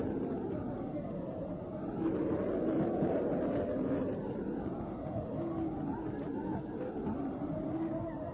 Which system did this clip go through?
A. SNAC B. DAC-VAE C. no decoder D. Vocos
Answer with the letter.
C